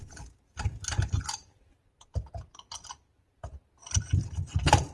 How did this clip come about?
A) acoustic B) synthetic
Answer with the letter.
A